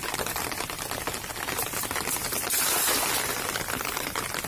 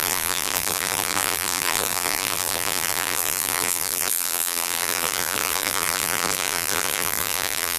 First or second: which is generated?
second